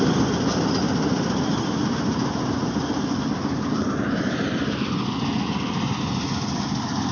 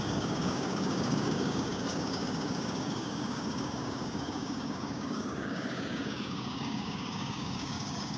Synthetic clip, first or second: second